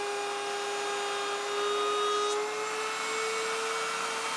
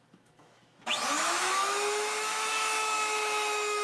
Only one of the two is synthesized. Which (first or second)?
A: second